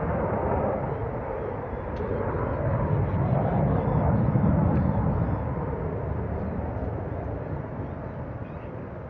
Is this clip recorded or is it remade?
recorded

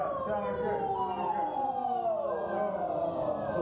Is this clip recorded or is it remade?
recorded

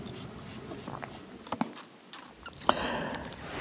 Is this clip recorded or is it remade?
recorded